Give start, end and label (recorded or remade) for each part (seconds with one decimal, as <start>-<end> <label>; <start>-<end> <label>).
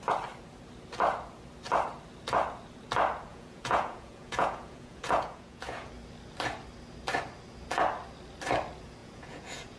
0.0-3.3 recorded; 3.3-5.9 remade; 5.9-9.0 recorded; 9.0-9.8 remade